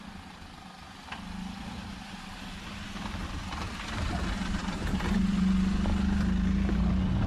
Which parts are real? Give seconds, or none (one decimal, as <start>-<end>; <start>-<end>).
0.0-1.8; 3.7-4.6; 5.2-7.3